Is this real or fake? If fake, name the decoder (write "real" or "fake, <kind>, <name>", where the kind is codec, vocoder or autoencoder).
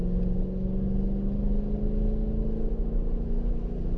real